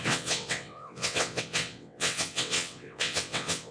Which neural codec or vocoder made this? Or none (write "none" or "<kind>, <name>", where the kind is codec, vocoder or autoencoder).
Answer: vocoder, WaveNeXt